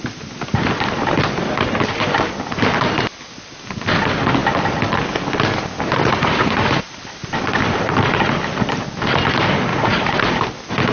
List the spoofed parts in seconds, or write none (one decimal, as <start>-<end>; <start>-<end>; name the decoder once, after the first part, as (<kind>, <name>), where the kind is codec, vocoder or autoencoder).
6.0-6.8 (vocoder, Vocos); 9.7-10.2